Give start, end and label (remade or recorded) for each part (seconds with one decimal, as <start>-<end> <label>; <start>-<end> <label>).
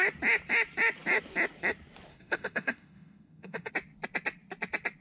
0.0-2.1 recorded; 2.1-3.7 remade; 3.7-5.0 recorded